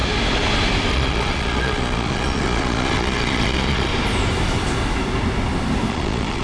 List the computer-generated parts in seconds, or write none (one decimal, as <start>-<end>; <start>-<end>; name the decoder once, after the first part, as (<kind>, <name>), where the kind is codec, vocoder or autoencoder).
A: 0.9-3.9 (vocoder, Vocos); 5.9-6.4